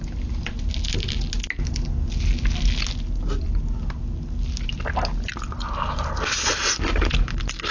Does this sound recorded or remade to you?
recorded